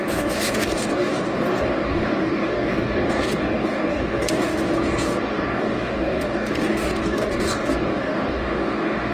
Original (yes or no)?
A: no